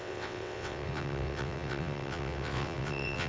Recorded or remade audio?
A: remade